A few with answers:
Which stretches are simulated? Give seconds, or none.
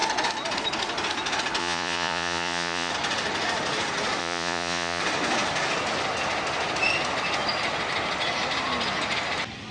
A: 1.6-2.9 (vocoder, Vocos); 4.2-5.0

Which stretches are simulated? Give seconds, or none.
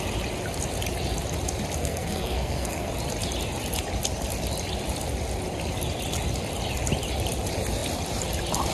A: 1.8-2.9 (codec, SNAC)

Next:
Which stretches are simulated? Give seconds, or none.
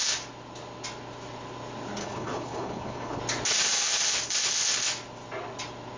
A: 2.0-3.2 (codec, HILCodec)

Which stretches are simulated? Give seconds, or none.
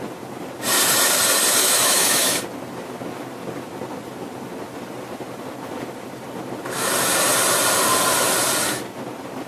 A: 1.6-2.4 (autoencoder, DAC-VAE)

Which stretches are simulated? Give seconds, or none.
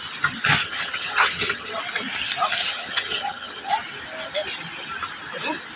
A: 0.6-1.8 (vocoder, HiFi-GAN); 2.6-3.7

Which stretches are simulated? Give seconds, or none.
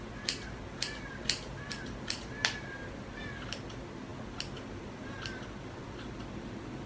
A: none